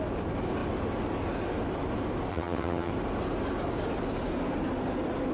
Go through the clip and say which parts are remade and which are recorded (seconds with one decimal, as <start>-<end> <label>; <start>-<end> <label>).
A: 0.0-2.3 recorded; 2.3-2.9 remade; 2.9-5.3 recorded